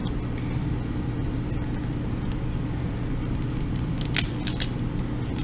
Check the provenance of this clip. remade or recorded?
recorded